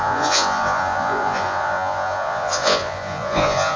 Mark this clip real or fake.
fake